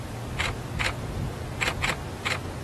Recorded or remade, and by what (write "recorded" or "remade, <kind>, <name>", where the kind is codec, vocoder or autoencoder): recorded